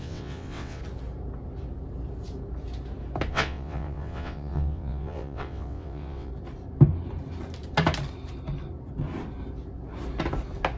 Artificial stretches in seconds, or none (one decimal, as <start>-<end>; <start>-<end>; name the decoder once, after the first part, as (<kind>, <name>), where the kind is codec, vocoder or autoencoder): 0.0-0.8 (vocoder, WaveNeXt); 3.3-6.3